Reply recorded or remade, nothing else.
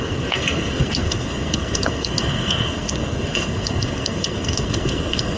remade